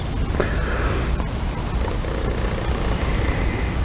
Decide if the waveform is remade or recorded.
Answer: recorded